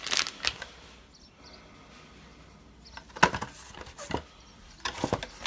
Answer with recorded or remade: recorded